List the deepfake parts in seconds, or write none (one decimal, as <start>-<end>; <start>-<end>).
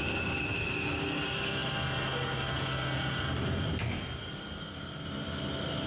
none